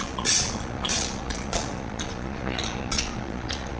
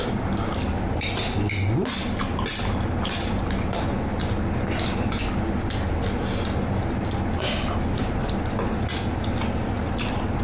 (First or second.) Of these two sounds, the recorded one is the second